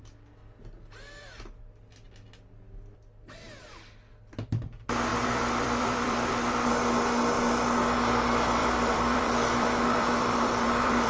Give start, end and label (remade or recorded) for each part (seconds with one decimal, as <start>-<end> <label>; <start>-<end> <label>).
0.0-5.1 recorded; 5.1-6.7 remade; 6.7-8.6 recorded; 8.6-11.1 remade